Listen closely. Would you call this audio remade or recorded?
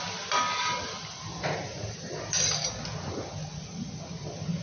recorded